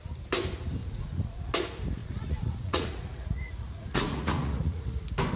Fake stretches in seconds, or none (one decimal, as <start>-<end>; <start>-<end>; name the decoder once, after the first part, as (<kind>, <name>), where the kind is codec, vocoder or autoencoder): 0.8-1.5 (vocoder, Vocos); 2.0-5.0